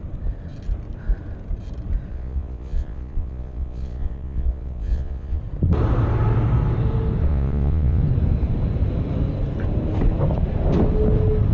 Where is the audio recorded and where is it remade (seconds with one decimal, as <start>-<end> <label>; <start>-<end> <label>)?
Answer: 0.0-2.1 recorded; 2.1-5.4 remade; 5.4-7.3 recorded; 7.3-8.0 remade; 8.0-11.5 recorded